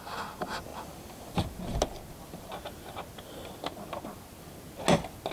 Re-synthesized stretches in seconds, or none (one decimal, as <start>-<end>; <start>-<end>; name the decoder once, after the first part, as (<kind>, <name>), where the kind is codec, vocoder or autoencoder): none